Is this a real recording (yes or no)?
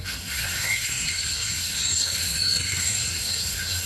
no